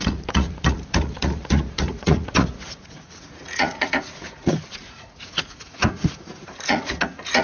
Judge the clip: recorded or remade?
remade